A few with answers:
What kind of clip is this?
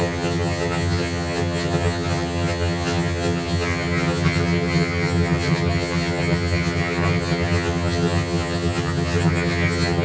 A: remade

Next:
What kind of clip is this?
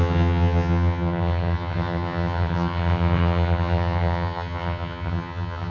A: remade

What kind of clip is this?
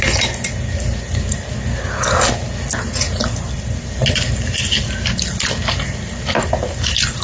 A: recorded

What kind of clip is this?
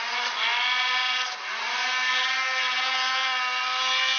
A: recorded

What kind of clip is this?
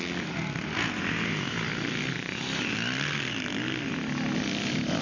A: recorded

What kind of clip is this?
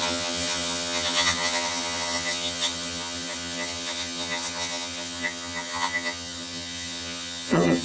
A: remade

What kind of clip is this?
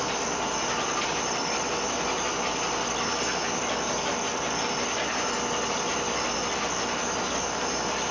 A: recorded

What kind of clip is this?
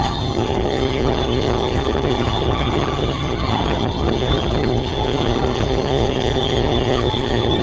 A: remade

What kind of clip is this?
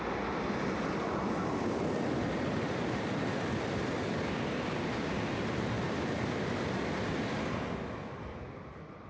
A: recorded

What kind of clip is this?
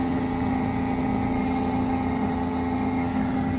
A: remade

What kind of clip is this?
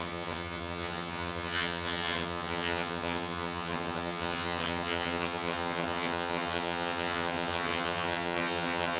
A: remade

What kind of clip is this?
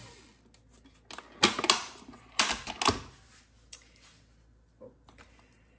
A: recorded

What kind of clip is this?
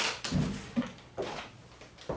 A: recorded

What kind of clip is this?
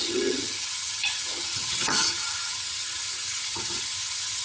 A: remade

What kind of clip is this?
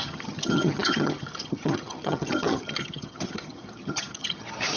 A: remade